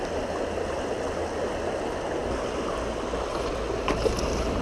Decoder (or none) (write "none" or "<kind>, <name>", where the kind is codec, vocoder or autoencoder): none